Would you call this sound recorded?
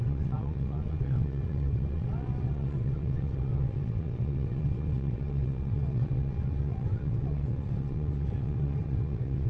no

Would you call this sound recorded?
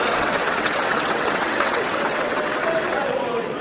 no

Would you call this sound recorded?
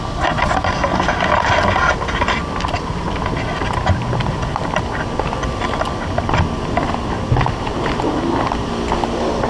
yes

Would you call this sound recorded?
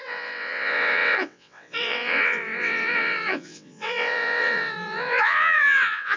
no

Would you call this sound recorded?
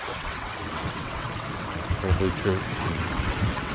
no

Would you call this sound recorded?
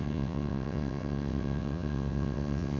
no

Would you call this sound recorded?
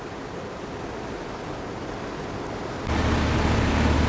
yes